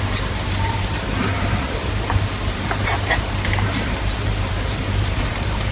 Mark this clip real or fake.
fake